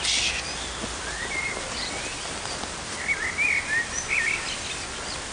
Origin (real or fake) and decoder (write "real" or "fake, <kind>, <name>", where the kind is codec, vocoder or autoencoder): real